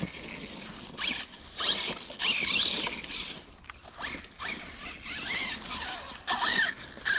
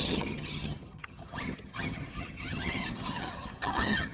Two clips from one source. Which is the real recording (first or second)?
first